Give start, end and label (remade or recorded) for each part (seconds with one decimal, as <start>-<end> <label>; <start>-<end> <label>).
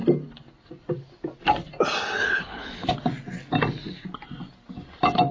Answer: 0.0-2.2 recorded; 2.2-2.9 remade; 2.9-5.3 recorded